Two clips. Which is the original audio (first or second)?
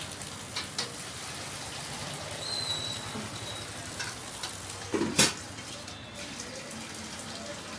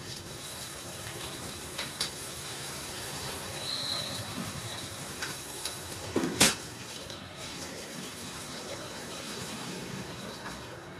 first